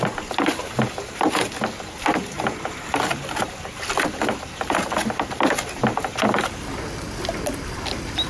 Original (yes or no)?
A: yes